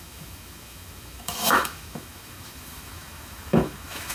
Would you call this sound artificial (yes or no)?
yes